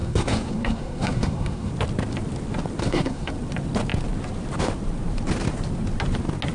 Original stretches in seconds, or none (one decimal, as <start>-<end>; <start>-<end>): 1.7-2.8; 3.3-6.5